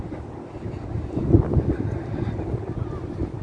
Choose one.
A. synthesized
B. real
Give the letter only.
B